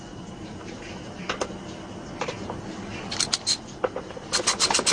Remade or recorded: recorded